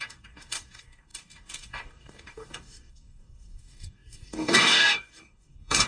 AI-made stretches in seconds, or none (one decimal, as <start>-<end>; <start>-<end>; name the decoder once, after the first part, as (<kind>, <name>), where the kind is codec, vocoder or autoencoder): 0.0-5.9 (codec, DAC)